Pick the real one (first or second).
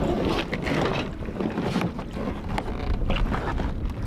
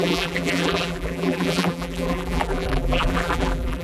first